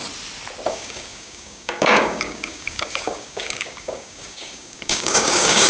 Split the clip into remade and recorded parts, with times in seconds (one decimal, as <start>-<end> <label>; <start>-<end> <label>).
0.0-0.7 recorded; 0.7-5.7 remade